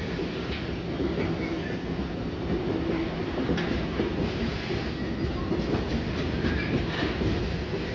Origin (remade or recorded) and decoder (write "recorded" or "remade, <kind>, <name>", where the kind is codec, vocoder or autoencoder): recorded